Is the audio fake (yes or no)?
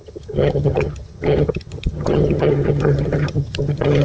yes